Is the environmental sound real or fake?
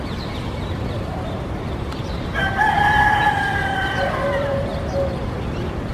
fake